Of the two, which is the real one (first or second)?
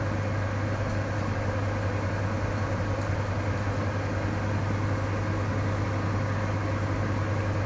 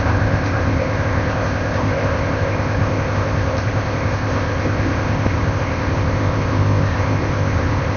first